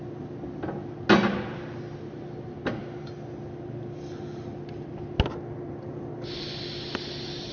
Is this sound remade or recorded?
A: recorded